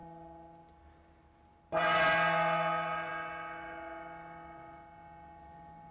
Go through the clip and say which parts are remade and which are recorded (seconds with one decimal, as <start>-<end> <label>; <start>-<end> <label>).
0.0-5.9 recorded